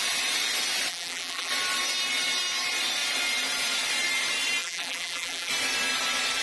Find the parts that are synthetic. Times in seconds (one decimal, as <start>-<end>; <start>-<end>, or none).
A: 0.9-1.5; 4.6-5.5

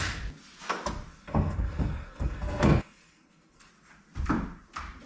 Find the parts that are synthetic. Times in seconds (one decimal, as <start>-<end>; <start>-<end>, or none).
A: 1.1-3.7

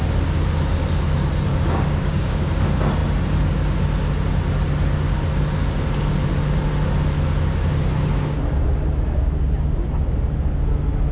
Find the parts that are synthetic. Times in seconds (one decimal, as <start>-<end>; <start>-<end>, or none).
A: 1.5-2.5

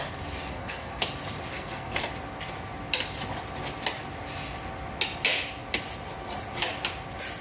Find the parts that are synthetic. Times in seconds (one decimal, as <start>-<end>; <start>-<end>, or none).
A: 0.5-1.0; 1.5-2.1

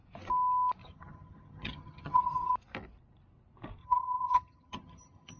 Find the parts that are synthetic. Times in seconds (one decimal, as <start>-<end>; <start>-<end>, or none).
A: 0.8-2.5; 3.8-5.4

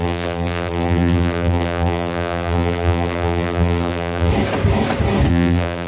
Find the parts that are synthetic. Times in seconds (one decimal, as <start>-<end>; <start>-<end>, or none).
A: 0.0-4.3; 5.3-5.9